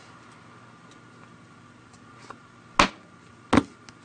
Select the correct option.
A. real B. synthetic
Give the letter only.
A